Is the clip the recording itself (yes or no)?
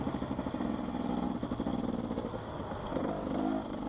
yes